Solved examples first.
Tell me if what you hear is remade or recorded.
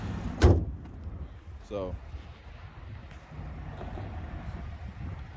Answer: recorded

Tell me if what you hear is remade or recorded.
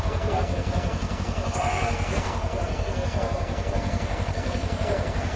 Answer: remade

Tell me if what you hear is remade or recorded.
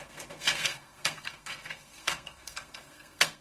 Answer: remade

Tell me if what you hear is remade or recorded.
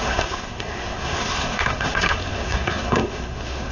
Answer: remade